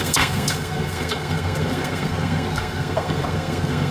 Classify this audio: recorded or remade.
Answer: remade